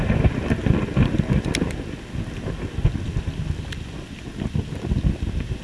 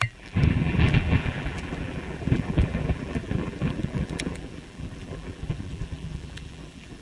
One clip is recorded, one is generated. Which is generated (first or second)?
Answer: second